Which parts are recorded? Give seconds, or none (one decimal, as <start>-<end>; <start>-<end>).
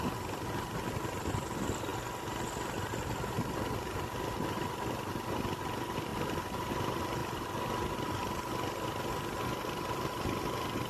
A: 0.0-10.9